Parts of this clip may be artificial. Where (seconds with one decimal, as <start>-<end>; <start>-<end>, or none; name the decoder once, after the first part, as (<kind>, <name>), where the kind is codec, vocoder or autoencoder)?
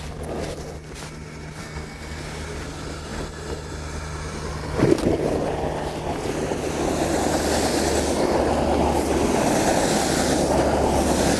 1.6-2.2 (codec, SNAC)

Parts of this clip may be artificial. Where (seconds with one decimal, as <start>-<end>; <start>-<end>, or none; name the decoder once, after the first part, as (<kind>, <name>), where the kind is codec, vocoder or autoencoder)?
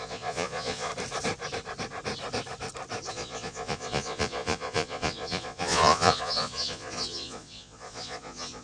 0.0-0.9 (vocoder, Vocos); 3.1-8.6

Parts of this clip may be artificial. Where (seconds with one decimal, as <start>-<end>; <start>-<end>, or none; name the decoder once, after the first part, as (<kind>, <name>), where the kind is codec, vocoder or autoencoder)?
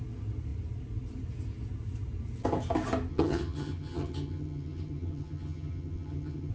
3.1-6.5 (vocoder, HiFi-GAN)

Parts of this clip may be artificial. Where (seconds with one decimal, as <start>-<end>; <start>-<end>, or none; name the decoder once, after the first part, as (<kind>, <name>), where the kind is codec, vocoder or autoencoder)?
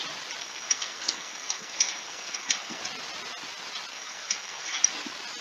0.4-2.8 (codec, SNAC); 3.9-4.8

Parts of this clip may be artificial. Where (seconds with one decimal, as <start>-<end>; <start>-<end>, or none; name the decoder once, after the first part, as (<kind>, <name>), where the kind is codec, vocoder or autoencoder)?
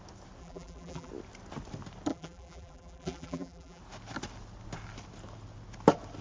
0.4-1.1 (vocoder, BigVGAN v2); 2.1-3.8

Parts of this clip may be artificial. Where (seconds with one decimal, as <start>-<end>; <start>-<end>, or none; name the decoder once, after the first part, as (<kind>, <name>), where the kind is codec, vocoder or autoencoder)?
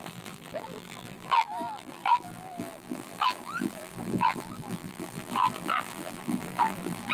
0.0-7.1 (vocoder, BigVGAN v2)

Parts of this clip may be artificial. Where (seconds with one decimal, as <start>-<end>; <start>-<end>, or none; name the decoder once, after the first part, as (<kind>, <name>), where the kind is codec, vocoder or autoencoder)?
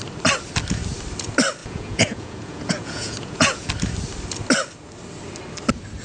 1.6-3.7 (vocoder, Vocos)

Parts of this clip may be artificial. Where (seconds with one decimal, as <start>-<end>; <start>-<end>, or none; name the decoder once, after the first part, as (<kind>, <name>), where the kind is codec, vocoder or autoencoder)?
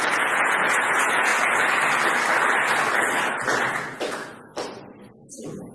0.0-1.3 (vocoder, Vocos); 3.6-4.5